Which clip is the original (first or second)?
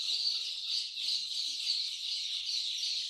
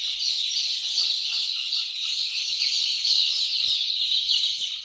second